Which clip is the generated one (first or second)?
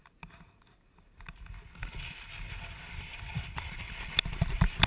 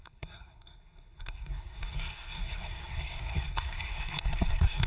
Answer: second